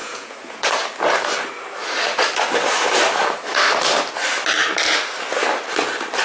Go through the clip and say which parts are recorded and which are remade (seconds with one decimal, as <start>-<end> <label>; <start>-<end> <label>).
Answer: 0.0-0.7 remade; 0.7-6.2 recorded